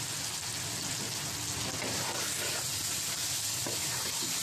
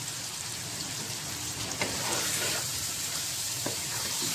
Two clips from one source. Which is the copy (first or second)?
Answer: second